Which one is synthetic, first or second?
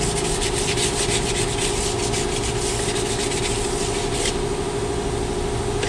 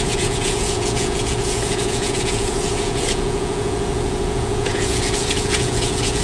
second